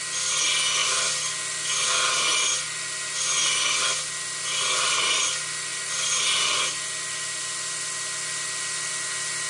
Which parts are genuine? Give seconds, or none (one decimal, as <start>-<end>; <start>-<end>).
0.0-9.5